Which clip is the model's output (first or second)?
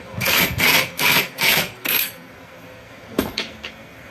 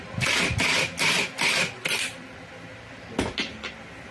first